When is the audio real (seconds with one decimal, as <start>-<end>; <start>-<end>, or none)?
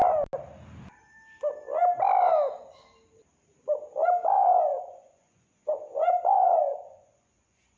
0.0-4.3